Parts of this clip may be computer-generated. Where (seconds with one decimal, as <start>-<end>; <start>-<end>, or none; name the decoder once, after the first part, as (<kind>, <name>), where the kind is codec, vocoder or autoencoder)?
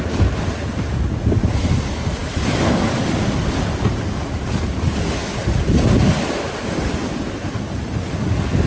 none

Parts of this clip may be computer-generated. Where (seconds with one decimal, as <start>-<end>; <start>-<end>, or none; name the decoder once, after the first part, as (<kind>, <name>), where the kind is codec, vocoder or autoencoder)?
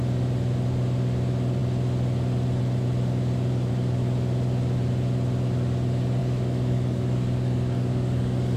6.2-8.6 (codec, DAC)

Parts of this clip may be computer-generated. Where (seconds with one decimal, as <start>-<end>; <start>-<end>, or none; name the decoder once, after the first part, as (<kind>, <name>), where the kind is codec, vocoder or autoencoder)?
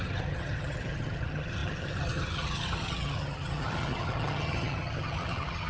0.0-5.7 (vocoder, HiFi-GAN)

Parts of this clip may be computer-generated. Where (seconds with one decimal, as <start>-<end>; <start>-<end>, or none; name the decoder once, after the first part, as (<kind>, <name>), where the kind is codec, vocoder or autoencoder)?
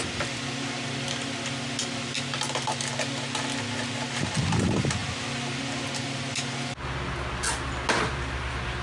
none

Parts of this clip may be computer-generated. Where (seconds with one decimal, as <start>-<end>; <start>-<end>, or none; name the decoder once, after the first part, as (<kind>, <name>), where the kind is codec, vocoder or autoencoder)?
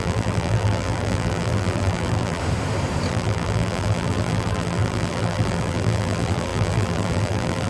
0.0-2.4 (vocoder, BigVGAN v2); 3.1-7.7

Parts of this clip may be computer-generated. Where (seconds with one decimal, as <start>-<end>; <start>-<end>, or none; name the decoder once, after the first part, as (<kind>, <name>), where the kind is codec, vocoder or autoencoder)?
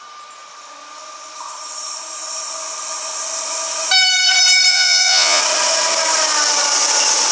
4.7-5.4 (vocoder, Vocos)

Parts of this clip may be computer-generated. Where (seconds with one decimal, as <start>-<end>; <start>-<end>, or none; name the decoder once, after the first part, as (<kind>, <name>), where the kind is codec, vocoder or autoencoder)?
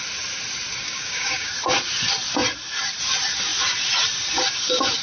0.8-1.5 (codec, DAC)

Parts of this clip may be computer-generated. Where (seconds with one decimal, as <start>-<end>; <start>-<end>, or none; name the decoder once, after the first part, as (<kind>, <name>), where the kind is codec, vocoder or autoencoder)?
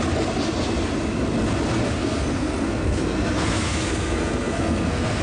2.0-5.2 (codec, SNAC)